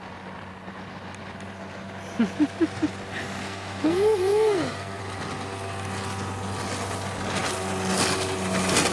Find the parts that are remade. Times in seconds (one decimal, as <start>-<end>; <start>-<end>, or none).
3.4-5.0

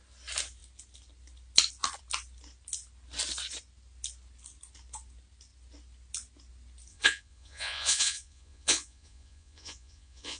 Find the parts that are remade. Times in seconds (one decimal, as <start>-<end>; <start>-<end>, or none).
6.9-10.4

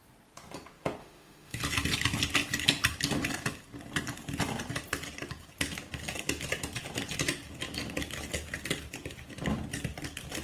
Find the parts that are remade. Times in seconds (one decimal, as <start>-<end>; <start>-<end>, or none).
1.0-1.6

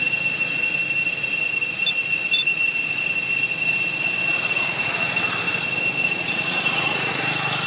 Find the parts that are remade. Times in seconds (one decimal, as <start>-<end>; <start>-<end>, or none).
2.5-3.1; 4.3-5.1; 6.0-7.2

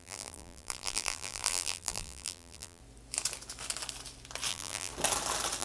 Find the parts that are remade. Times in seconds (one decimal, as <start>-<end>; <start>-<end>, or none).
0.0-2.8; 4.5-4.9